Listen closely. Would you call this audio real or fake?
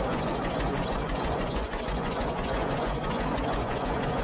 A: fake